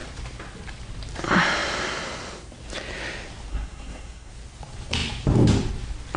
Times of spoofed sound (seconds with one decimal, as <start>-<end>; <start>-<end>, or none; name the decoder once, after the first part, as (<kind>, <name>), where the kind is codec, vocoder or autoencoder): 3.5-4.3 (codec, SNAC)